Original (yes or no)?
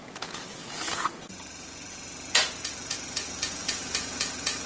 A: no